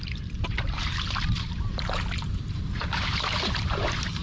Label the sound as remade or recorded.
remade